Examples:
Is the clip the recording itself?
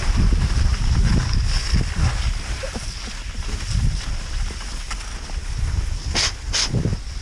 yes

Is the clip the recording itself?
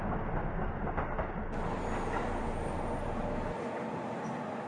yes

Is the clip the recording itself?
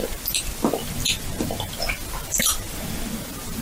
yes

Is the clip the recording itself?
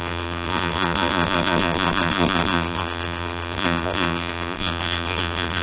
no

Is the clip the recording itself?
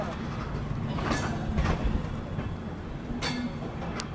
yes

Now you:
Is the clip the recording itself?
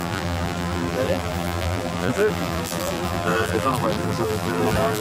no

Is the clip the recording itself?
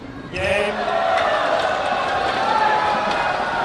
yes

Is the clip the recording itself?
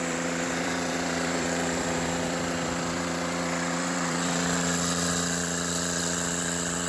no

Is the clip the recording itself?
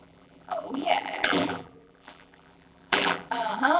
no